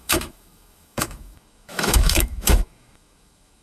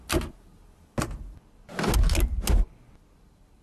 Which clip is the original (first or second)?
second